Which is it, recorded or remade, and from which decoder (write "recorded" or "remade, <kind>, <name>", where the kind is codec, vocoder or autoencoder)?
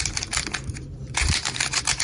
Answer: remade, vocoder, BigVGAN v2